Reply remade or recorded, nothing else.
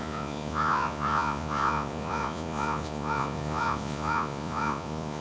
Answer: remade